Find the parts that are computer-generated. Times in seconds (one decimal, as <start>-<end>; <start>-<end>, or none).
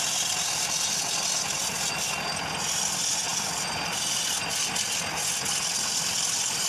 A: none